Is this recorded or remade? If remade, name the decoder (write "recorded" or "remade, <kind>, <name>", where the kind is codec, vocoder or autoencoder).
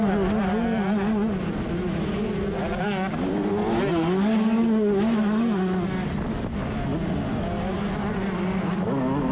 recorded